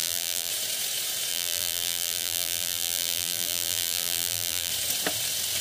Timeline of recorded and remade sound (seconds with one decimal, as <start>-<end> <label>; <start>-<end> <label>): 0.0-0.5 remade; 0.5-1.3 recorded; 1.3-4.7 remade; 4.7-5.6 recorded